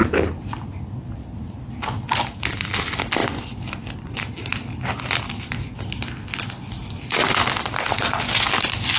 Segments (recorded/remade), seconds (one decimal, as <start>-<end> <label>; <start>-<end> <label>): 0.0-9.0 recorded